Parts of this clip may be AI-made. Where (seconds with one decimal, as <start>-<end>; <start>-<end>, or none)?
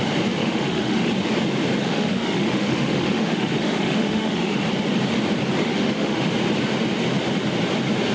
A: 0.4-1.1; 1.8-4.6; 5.6-6.3